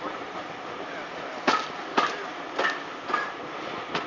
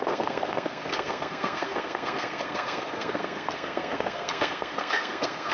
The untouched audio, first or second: first